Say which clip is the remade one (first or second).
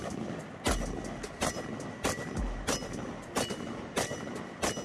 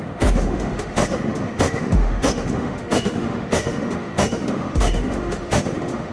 second